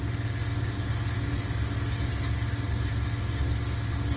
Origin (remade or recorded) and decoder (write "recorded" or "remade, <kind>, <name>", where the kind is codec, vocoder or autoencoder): recorded